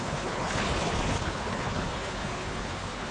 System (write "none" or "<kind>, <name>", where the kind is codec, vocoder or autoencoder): codec, HILCodec